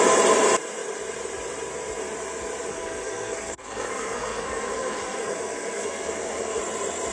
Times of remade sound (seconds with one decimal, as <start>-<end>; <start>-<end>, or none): 2.7-6.6